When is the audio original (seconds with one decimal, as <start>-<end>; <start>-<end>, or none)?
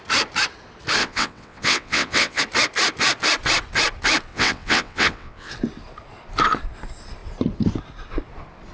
0.0-1.0; 2.4-4.3; 5.5-8.7